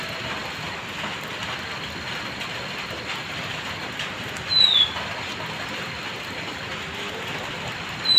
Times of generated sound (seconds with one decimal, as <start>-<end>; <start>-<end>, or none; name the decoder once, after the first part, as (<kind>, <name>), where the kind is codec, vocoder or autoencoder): none